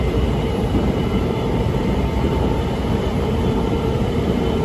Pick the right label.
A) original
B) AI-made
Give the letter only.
B